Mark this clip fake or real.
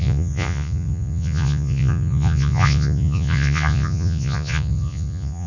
fake